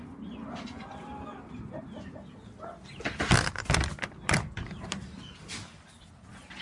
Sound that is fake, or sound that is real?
real